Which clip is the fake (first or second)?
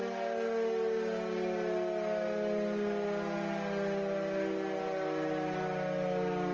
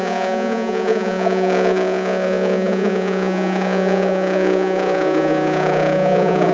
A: second